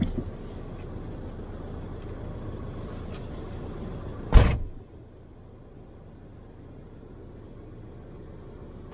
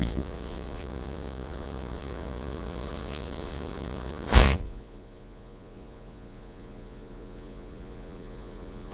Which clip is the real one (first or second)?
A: first